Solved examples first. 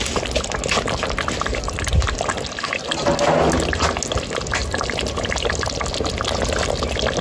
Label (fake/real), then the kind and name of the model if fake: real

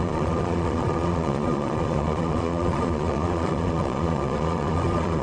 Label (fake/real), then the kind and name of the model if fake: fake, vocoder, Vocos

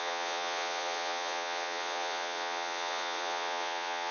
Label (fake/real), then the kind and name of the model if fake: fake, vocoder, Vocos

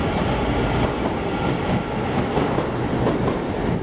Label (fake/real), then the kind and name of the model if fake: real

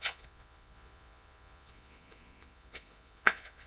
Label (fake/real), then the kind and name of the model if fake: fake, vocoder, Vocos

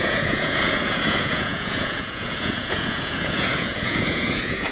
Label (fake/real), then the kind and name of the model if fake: fake, vocoder, Vocos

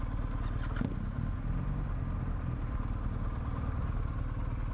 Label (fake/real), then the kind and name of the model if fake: real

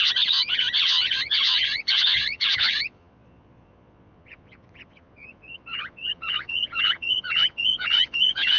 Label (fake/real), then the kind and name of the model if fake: fake, vocoder, Vocos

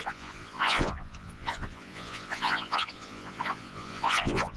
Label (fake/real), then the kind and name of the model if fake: fake, vocoder, Vocos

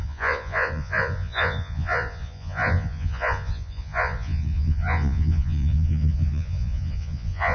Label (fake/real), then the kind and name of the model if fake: fake, vocoder, Vocos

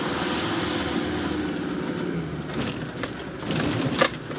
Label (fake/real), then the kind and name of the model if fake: real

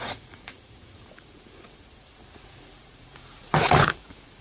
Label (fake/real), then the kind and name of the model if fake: fake, vocoder, Vocos